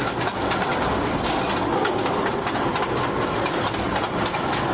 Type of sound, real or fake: real